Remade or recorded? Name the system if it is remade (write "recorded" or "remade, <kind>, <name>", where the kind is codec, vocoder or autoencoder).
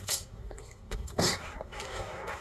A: remade, codec, SNAC